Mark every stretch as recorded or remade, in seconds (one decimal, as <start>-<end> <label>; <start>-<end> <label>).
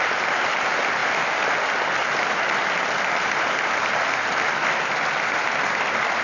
0.0-6.2 recorded